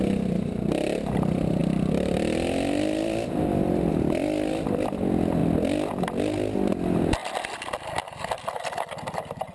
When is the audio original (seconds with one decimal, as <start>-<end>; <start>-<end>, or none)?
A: 0.0-1.6; 3.9-9.5